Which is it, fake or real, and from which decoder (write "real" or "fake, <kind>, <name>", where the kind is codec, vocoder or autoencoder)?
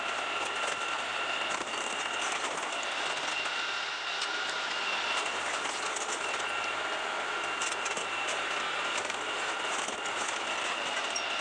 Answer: real